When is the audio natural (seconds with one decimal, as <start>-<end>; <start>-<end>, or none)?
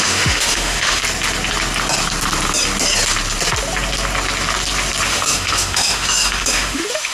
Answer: 1.0-5.1